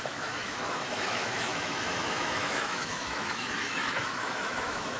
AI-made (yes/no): yes